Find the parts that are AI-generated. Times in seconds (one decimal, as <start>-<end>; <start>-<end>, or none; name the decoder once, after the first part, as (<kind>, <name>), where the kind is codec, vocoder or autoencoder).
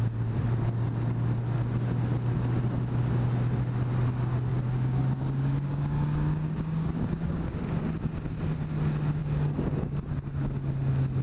4.5-7.6 (codec, DAC); 9.2-10.1